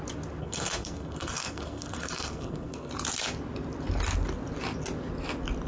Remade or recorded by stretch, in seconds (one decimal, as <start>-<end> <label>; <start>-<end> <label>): 0.0-0.4 recorded; 0.4-2.9 remade; 2.9-5.7 recorded